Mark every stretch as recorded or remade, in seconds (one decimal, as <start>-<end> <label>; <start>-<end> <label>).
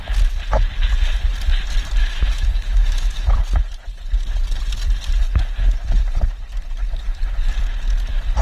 0.0-2.0 recorded; 2.0-3.4 remade; 3.4-8.4 recorded